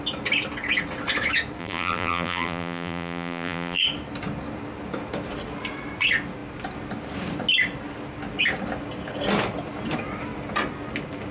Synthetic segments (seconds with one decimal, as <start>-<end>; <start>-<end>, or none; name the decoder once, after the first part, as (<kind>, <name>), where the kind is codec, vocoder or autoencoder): 1.6-3.8 (vocoder, BigVGAN v2)